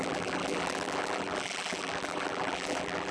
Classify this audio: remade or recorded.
remade